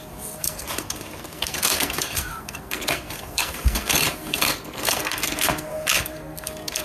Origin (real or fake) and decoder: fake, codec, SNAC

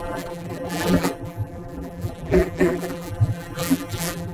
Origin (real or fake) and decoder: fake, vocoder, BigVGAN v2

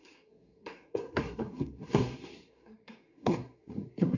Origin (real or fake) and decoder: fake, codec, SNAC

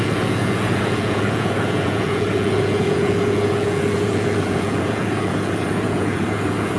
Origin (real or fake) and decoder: fake, vocoder, Vocos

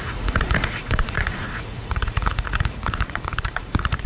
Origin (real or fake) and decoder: fake, vocoder, Vocos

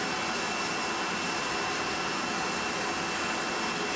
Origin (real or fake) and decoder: real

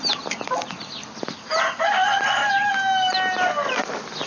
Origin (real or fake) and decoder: real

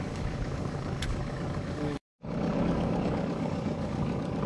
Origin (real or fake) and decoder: fake, codec, DAC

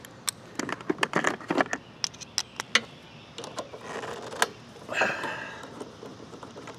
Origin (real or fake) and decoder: real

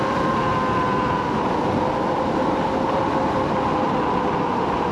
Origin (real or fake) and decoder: real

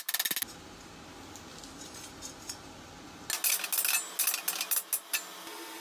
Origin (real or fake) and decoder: real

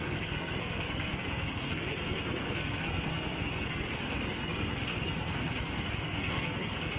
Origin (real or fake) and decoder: fake, codec, SNAC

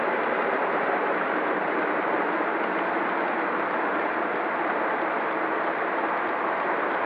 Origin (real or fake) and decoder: real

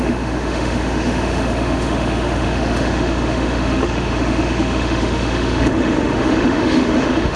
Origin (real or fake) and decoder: fake, autoencoder, DAC-VAE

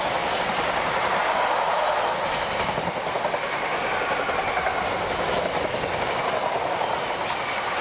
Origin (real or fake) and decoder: real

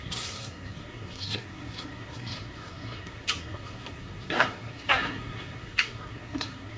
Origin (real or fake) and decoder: fake, codec, SNAC